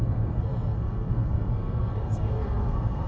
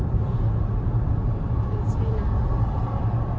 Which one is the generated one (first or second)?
first